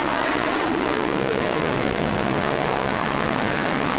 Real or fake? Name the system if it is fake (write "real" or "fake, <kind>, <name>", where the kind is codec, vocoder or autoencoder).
fake, vocoder, WaveNeXt